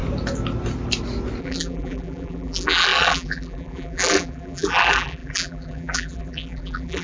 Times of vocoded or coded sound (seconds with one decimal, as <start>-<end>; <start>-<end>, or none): 1.4-7.0